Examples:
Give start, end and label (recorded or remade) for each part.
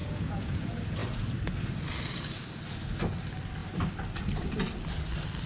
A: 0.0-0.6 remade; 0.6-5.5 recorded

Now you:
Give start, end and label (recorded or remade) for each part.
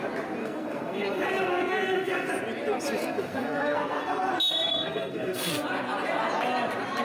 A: 0.0-0.4 recorded; 0.4-2.3 remade; 2.3-3.0 recorded; 3.0-4.3 remade; 4.3-4.7 recorded; 4.7-5.5 remade; 5.5-7.0 recorded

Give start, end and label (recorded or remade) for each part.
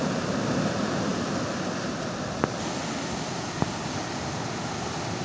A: 0.0-5.2 recorded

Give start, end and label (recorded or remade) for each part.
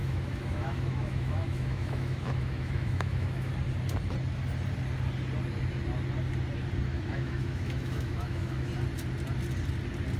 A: 0.0-3.5 remade; 3.5-6.9 recorded; 6.9-8.7 remade; 8.7-10.2 recorded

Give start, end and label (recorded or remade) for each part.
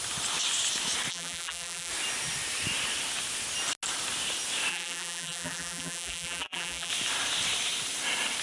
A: 0.0-1.1 recorded; 1.1-1.9 remade; 1.9-4.7 recorded; 4.7-6.9 remade; 6.9-8.4 recorded